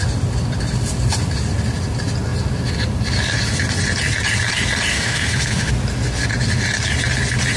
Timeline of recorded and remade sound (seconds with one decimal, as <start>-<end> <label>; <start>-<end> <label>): 0.0-4.9 recorded; 4.9-5.7 remade; 5.7-7.6 recorded